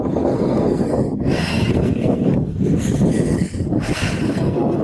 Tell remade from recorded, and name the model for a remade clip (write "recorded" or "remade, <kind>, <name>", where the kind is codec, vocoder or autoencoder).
remade, codec, SNAC